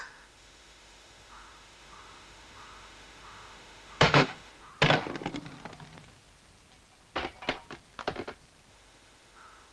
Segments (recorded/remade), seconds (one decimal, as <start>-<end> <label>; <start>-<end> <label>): 0.0-4.7 remade; 4.7-8.7 recorded; 8.7-9.7 remade